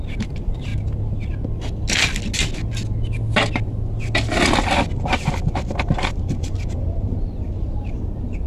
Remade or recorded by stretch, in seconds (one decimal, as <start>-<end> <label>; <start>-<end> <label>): 0.0-0.7 remade; 0.7-5.8 recorded; 5.8-8.5 remade